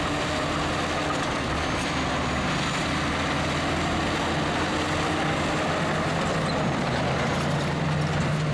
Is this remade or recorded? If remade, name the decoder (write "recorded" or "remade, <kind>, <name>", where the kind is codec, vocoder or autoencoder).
recorded